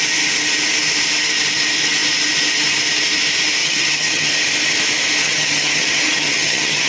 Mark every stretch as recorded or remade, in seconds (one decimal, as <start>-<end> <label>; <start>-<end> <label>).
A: 0.0-3.6 recorded; 3.6-4.3 remade; 4.3-5.2 recorded; 5.2-6.9 remade